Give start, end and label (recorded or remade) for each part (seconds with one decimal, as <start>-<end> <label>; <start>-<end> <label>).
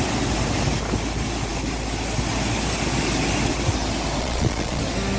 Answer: 0.0-4.2 recorded; 4.2-4.8 remade; 4.8-5.2 recorded